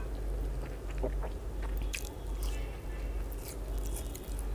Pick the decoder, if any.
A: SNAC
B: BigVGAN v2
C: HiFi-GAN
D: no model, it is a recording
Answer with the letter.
D